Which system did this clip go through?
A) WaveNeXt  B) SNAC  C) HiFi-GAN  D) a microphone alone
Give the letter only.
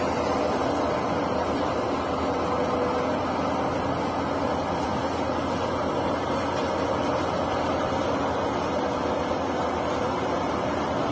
D